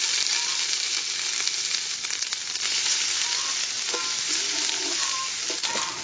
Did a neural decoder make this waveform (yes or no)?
no